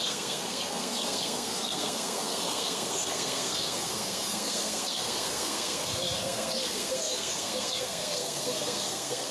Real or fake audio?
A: fake